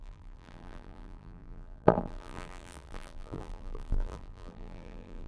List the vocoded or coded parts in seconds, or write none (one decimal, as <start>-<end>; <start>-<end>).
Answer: 0.0-5.3